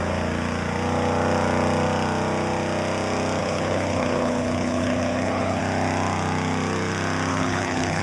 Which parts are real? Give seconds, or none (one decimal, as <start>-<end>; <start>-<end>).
0.0-3.4; 5.6-7.3